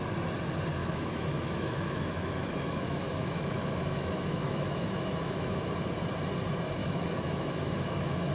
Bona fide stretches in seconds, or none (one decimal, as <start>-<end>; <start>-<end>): 0.0-0.8; 5.7-6.8